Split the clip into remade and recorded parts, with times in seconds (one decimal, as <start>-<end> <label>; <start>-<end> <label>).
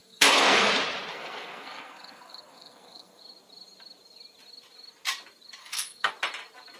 0.0-0.7 remade; 0.7-1.1 recorded; 1.1-3.2 remade; 3.2-5.6 recorded; 5.6-6.1 remade; 6.1-6.8 recorded